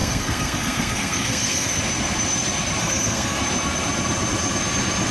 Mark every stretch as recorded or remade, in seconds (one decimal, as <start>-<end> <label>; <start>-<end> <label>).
0.0-1.8 remade; 1.8-2.8 recorded; 2.8-3.4 remade; 3.4-5.1 recorded